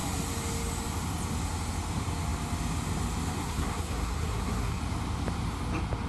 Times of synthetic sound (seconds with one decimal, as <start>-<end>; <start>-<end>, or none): 3.4-4.8